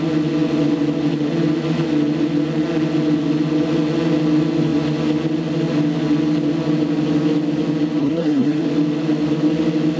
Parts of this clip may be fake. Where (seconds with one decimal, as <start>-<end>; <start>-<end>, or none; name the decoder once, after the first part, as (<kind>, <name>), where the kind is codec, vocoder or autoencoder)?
8.0-8.6 (codec, SNAC)